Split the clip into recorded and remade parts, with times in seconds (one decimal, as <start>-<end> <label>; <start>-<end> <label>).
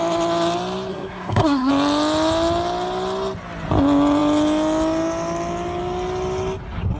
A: 0.0-0.9 recorded; 0.9-1.7 remade; 1.7-7.0 recorded